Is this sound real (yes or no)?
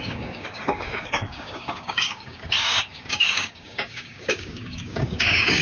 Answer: no